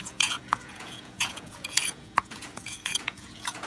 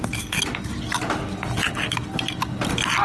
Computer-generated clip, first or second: first